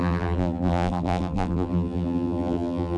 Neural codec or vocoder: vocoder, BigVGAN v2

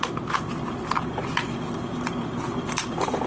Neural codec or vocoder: none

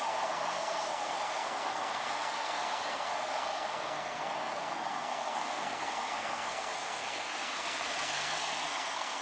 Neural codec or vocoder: codec, SNAC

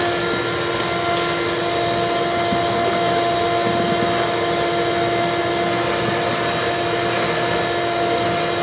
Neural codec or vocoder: none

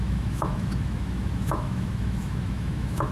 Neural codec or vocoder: autoencoder, DAC-VAE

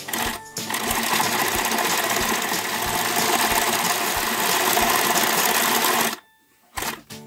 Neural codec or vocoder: none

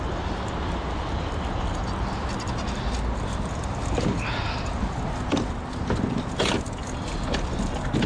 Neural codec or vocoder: none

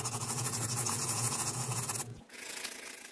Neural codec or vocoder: vocoder, Vocos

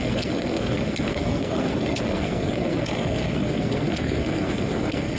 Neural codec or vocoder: codec, SNAC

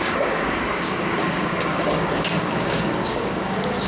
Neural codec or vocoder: codec, DAC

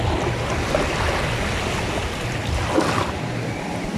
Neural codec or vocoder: none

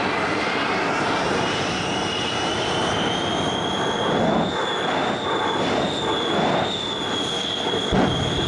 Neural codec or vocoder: none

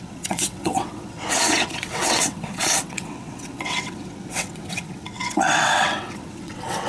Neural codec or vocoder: vocoder, WaveNeXt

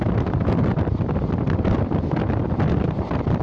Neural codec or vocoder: vocoder, BigVGAN v2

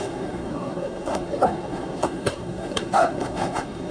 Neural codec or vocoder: codec, SNAC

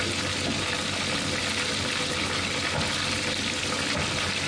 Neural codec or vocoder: none